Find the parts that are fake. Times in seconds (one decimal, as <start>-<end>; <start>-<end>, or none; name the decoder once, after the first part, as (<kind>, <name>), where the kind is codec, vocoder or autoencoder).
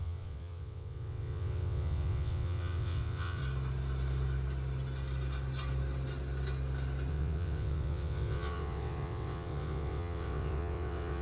0.0-3.4 (vocoder, WaveNeXt); 7.1-11.2